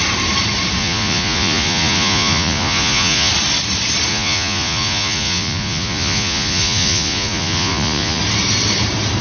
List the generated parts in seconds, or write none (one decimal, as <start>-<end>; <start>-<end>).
0.8-3.3; 4.1-8.2